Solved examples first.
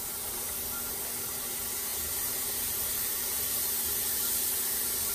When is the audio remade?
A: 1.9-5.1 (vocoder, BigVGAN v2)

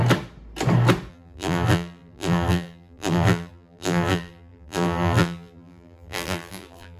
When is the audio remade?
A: 1.1-7.0 (vocoder, BigVGAN v2)